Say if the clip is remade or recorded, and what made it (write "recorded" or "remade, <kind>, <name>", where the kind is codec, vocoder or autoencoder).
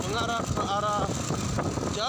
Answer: recorded